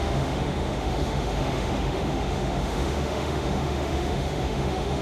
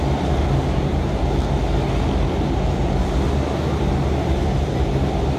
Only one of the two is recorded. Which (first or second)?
second